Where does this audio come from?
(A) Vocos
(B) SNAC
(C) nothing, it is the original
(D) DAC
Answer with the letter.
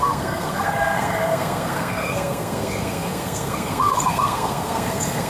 B